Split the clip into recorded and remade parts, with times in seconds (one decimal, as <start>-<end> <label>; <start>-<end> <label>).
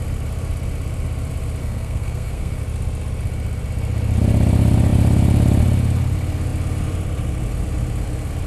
0.0-1.6 recorded; 1.6-2.6 remade; 2.6-8.5 recorded